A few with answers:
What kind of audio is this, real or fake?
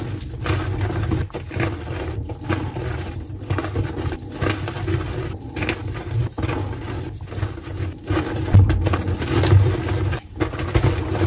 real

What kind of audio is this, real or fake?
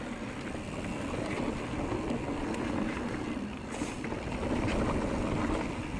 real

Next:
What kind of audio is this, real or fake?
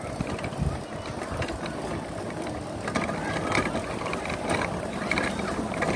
real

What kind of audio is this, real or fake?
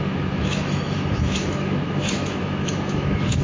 fake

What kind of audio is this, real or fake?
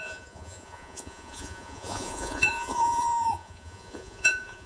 fake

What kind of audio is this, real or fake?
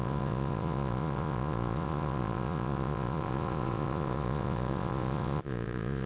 fake